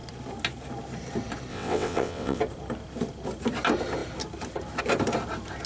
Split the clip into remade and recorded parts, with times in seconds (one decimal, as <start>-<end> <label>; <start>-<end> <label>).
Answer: 0.0-1.5 recorded; 1.5-2.4 remade; 2.4-5.7 recorded